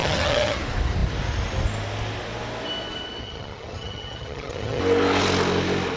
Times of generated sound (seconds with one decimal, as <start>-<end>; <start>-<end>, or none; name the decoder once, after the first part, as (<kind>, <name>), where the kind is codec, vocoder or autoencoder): 0.0-0.6 (vocoder, HiFi-GAN); 3.2-4.8